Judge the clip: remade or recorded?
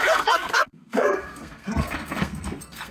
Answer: remade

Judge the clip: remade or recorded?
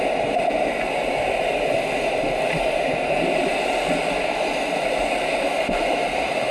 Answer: recorded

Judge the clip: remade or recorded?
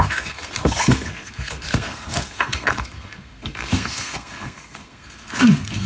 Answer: remade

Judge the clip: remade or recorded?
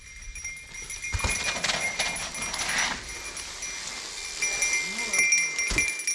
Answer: recorded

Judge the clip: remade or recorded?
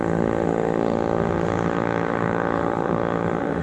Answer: remade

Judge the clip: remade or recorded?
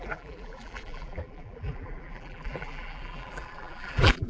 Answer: remade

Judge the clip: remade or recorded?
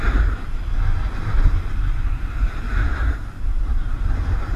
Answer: recorded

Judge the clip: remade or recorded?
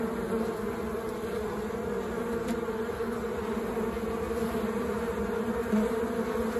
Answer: recorded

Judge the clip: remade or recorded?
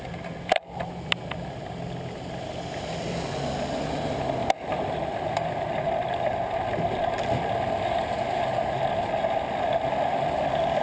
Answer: recorded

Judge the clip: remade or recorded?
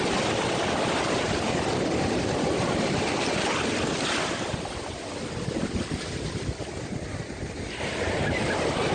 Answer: recorded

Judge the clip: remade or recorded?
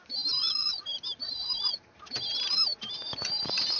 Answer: recorded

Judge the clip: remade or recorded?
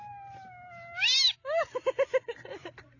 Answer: recorded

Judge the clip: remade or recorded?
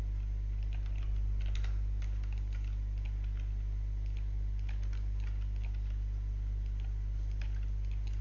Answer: recorded